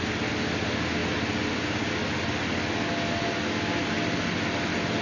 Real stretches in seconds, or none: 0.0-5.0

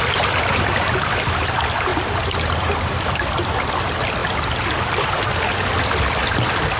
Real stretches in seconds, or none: 0.0-6.8

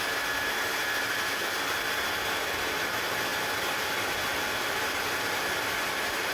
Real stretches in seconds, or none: 0.0-3.3

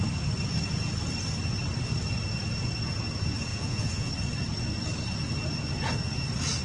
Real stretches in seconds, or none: 0.0-3.5; 4.1-6.6

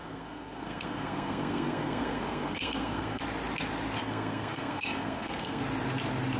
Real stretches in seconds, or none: 3.2-4.0; 5.6-6.4

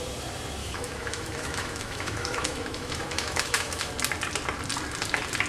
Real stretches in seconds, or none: 0.0-0.6; 3.9-5.5

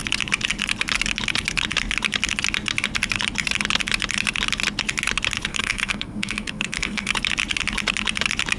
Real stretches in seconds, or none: 0.0-5.5; 7.1-8.6